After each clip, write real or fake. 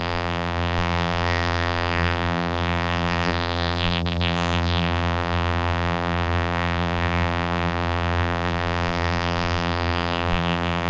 fake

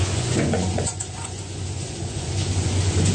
fake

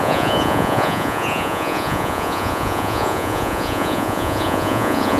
fake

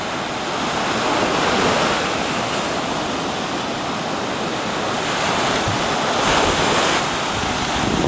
real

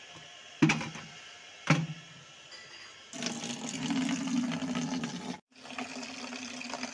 real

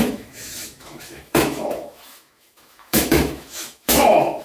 fake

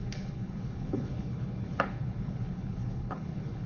fake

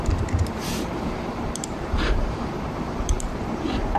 fake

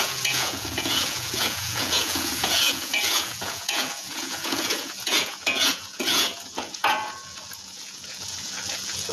fake